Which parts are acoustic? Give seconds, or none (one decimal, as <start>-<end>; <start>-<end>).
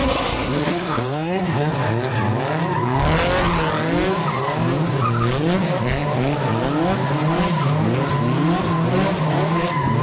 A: 1.7-10.0